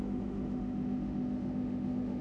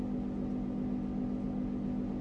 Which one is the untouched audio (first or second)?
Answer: second